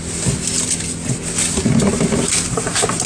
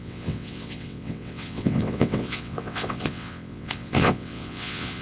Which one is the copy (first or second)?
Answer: second